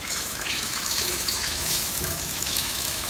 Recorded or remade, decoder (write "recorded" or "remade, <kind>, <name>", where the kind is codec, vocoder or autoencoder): remade, autoencoder, DAC-VAE